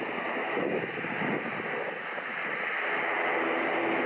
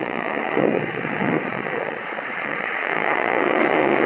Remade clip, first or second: second